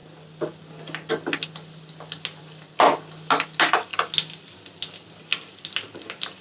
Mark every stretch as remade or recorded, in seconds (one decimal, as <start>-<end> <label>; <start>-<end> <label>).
0.0-6.4 recorded